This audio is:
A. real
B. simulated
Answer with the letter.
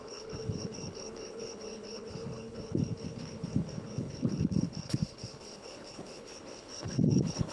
B